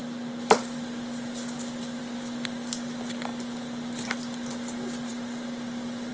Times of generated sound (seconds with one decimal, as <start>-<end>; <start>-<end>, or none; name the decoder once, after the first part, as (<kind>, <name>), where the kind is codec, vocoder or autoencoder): none